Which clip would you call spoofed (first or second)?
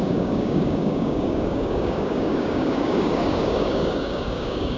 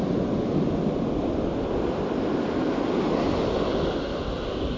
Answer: first